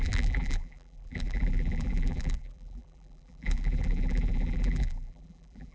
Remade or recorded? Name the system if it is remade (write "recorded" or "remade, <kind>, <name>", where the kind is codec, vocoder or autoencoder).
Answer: remade, vocoder, BigVGAN v2